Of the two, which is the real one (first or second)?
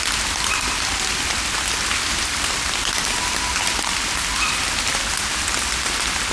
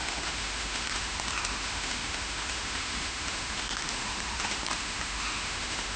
first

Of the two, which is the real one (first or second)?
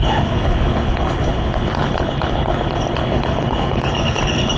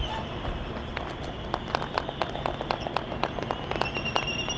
second